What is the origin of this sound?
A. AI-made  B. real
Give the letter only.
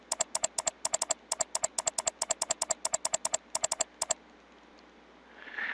B